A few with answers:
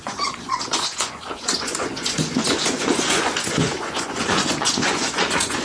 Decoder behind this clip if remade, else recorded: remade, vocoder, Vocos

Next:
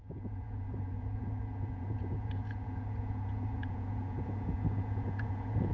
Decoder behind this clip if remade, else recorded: remade, vocoder, Vocos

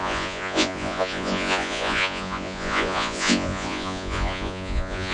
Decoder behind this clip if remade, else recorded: remade, vocoder, Vocos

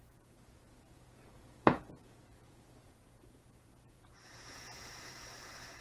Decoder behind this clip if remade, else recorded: remade, vocoder, Vocos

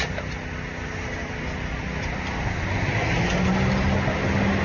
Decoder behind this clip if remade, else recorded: recorded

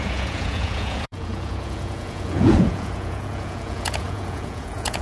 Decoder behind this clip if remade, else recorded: remade, vocoder, Vocos